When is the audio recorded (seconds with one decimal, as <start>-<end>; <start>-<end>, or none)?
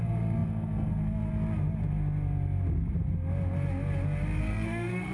1.3-4.4